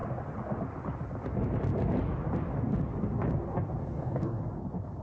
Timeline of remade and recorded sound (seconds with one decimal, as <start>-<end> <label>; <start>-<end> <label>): 0.0-3.8 recorded; 3.8-4.4 remade; 4.4-5.0 recorded